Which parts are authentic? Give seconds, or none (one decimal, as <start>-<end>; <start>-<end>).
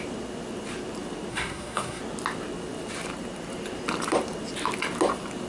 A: 0.0-1.3; 2.0-5.5